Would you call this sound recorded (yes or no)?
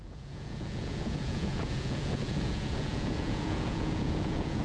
no